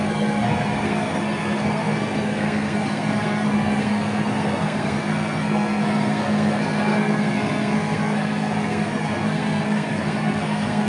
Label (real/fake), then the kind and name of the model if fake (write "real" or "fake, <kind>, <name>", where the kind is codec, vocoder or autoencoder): fake, codec, SNAC